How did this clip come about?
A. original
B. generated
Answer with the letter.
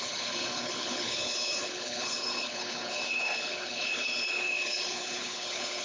B